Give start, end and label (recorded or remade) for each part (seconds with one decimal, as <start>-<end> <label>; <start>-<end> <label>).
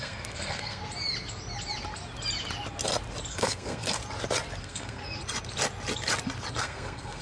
0.0-0.8 remade; 0.8-3.3 recorded; 3.3-4.0 remade; 4.0-4.6 recorded; 4.6-5.0 remade; 5.0-6.6 recorded; 6.6-7.2 remade